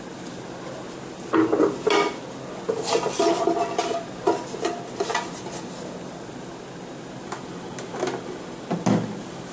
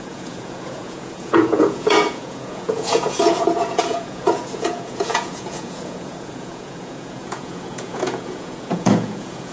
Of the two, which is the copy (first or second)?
second